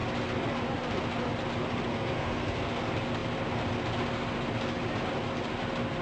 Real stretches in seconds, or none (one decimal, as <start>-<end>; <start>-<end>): 0.0-1.9; 2.8-6.0